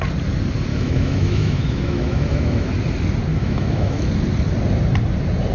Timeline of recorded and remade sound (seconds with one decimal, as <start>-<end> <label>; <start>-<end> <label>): 0.0-0.7 recorded; 0.7-2.7 remade; 2.7-3.3 recorded; 3.3-4.1 remade; 4.1-5.5 recorded